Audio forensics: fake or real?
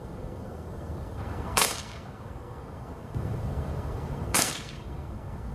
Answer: fake